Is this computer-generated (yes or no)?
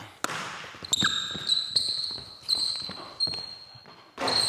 no